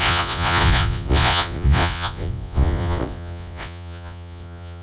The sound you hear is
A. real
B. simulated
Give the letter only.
B